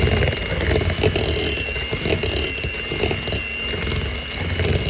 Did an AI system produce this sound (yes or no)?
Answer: no